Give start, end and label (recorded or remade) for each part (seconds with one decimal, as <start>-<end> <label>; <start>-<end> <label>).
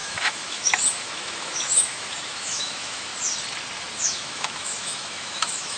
0.0-3.1 remade; 3.1-4.0 recorded; 4.0-5.8 remade